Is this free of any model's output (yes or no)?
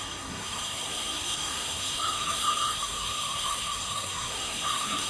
no